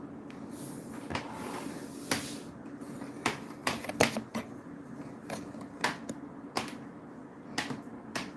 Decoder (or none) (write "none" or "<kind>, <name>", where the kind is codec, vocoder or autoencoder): none